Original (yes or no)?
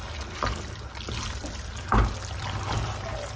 yes